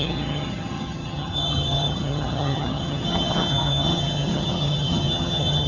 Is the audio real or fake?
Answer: fake